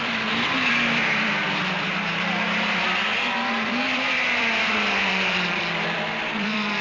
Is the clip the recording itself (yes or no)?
no